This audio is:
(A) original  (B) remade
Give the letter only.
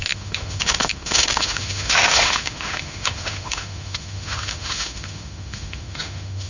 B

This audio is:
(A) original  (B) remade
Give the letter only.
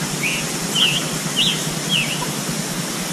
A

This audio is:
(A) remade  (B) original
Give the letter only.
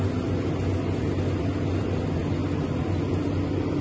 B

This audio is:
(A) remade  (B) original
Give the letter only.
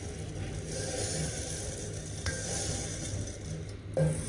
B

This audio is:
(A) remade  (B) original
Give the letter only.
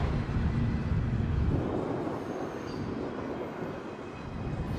B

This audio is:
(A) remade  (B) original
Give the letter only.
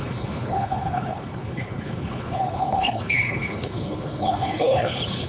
A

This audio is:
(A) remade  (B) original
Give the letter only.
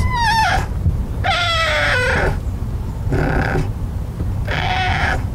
B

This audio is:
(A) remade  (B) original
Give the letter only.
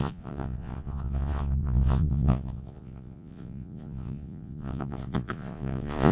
A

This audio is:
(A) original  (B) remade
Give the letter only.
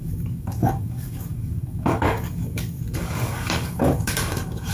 B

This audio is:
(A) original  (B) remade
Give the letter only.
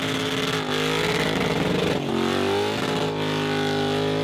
A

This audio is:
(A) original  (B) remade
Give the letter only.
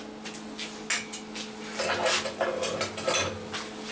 A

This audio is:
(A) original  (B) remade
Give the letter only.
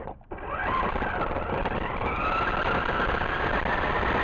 A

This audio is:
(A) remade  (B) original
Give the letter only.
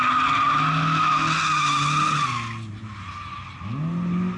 B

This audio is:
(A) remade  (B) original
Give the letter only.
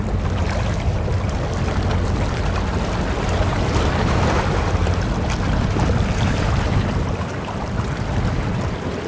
B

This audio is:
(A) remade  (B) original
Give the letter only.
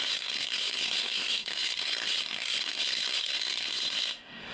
A